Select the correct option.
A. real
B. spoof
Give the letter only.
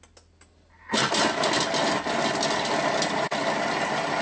A